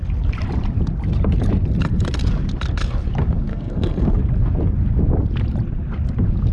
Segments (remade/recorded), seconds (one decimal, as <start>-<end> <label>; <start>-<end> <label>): 0.0-3.5 recorded; 3.5-4.2 remade; 4.2-6.5 recorded